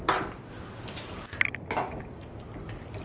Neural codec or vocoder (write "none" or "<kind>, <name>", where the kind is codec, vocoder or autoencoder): none